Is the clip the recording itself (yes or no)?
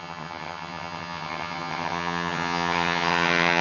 no